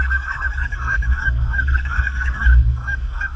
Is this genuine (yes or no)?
no